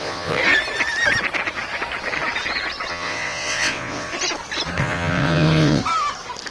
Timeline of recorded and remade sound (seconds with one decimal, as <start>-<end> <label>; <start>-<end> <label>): 0.0-0.4 remade; 0.4-2.9 recorded; 2.9-4.1 remade; 4.1-4.8 recorded; 4.8-5.8 remade; 5.8-6.5 recorded

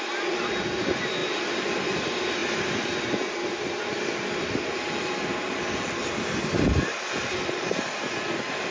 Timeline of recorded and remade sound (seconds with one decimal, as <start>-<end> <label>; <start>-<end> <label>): 0.0-8.7 recorded

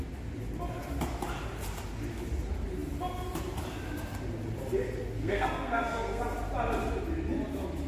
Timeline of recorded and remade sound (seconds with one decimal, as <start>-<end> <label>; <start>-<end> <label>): 0.0-5.2 recorded; 5.2-6.2 remade; 6.2-7.9 recorded

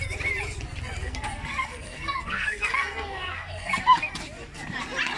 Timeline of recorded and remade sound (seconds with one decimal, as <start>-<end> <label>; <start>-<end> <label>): 0.0-1.0 recorded; 1.0-4.1 remade; 4.1-5.2 recorded